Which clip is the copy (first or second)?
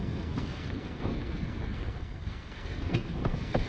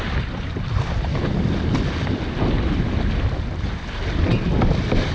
first